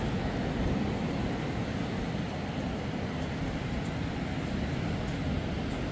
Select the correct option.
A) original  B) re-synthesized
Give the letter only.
A